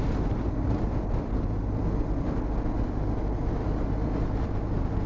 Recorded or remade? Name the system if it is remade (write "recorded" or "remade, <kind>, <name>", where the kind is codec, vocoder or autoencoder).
recorded